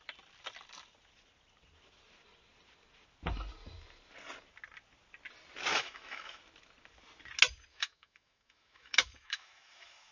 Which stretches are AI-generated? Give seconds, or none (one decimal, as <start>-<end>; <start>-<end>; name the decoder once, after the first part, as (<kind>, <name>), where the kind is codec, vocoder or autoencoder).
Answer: 5.7-6.4 (autoencoder, DAC-VAE); 7.7-10.1